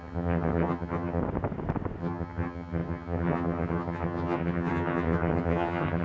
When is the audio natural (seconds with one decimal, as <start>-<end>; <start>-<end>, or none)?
1.2-2.0